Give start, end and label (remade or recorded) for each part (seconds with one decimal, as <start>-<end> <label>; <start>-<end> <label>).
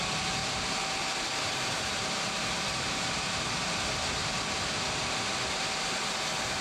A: 0.0-0.4 recorded; 0.4-3.8 remade; 3.8-4.2 recorded; 4.2-5.2 remade; 5.2-6.6 recorded